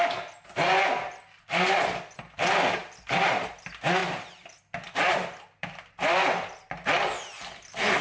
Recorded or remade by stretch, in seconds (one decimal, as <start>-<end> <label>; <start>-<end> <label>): 0.0-8.0 recorded